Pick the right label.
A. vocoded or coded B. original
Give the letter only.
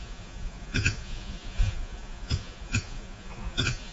A